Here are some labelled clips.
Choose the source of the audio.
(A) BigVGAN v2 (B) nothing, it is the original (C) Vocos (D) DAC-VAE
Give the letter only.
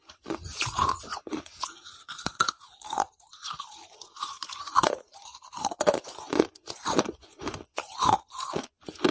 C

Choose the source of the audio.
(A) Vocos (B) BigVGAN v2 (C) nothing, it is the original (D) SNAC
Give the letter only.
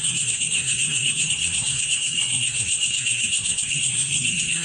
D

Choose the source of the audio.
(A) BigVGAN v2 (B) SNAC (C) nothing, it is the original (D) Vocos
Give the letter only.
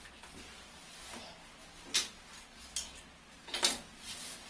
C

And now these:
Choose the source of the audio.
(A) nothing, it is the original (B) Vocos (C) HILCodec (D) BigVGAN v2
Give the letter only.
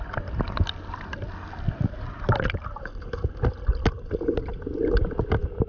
A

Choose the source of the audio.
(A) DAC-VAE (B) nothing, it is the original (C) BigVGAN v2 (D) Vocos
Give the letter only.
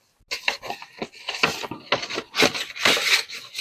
B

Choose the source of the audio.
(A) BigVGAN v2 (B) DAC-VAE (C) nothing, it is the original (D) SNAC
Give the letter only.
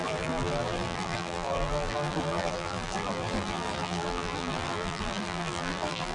A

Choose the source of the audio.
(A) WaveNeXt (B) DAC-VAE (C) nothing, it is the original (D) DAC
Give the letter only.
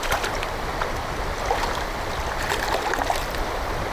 C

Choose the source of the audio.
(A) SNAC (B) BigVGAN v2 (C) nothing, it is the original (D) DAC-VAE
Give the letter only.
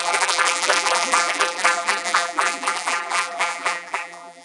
B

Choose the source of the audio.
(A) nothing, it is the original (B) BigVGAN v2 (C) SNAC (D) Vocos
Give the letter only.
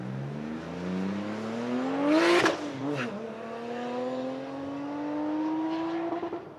A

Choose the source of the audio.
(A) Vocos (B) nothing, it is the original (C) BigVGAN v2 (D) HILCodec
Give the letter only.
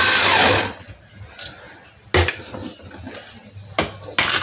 B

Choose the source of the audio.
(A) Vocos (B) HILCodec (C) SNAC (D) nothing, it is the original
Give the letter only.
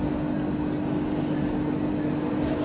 D